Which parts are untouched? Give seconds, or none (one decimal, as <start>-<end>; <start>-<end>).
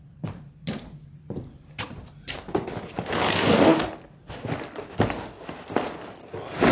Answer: 0.0-6.7